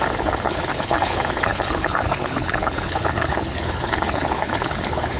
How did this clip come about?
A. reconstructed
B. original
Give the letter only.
A